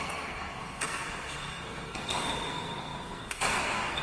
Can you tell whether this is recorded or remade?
remade